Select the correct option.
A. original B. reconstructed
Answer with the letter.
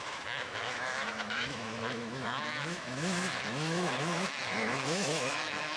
B